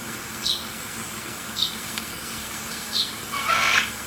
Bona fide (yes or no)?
no